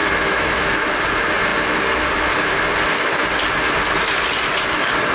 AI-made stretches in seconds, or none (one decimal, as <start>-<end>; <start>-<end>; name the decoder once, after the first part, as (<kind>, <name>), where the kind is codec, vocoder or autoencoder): 0.0-0.9 (autoencoder, DAC-VAE)